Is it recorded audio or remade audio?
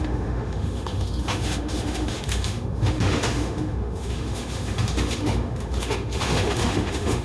remade